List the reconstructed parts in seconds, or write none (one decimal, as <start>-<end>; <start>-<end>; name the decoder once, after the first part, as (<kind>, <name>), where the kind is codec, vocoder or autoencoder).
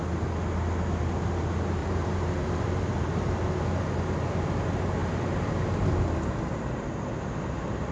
1.8-3.4 (vocoder, BigVGAN v2)